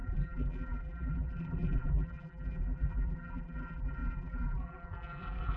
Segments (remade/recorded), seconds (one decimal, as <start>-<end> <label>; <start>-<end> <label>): 0.0-5.6 remade